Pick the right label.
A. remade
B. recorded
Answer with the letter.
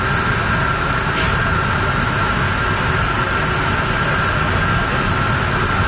B